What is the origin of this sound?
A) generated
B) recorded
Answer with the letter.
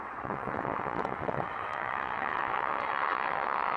A